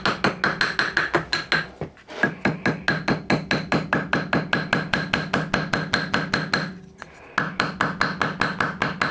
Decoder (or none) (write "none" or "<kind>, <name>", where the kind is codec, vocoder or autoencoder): none